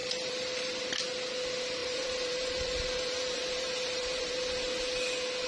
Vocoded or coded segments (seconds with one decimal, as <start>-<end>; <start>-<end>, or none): 0.0-0.8; 1.8-4.3